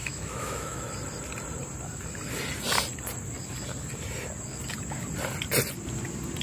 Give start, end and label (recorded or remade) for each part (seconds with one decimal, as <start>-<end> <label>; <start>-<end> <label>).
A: 0.0-0.8 remade; 0.8-6.4 recorded